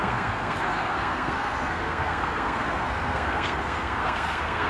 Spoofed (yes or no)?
yes